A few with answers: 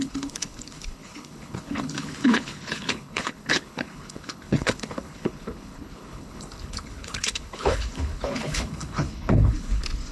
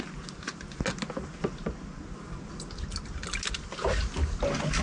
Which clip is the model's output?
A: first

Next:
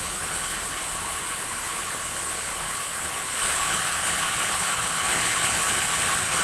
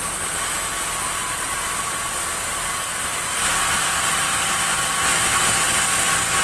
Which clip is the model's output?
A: first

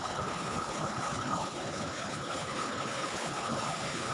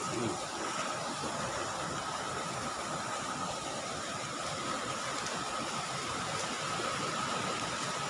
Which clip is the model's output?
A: first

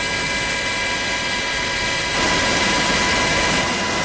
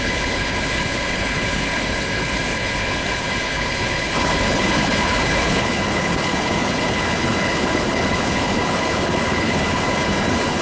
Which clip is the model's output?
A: second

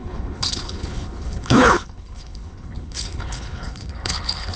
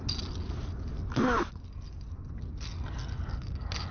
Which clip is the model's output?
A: first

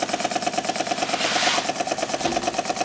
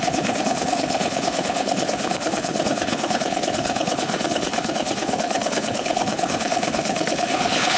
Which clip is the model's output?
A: second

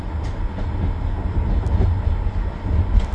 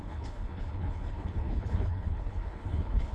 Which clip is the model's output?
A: second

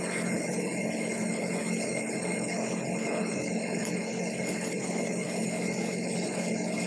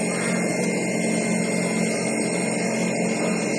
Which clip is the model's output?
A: first